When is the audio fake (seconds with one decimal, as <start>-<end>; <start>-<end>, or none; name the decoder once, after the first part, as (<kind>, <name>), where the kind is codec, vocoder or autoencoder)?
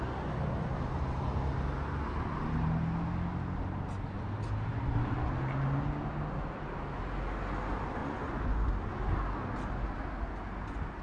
8.0-8.7 (vocoder, Vocos)